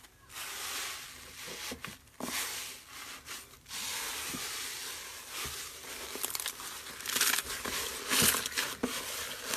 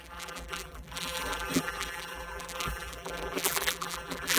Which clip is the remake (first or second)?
second